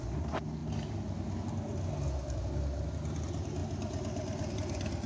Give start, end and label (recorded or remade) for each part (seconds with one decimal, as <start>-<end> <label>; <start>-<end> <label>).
0.0-5.1 recorded

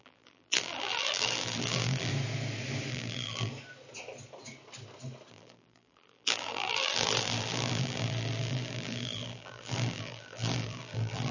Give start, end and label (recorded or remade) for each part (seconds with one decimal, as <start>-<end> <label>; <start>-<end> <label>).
0.0-2.1 remade; 2.1-2.9 recorded; 2.9-3.5 remade; 3.5-5.3 recorded; 5.3-11.3 remade